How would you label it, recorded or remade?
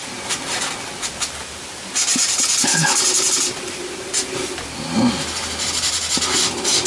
recorded